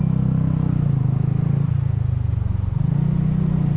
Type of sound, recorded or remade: recorded